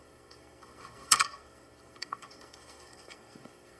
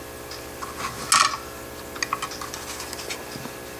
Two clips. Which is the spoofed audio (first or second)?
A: first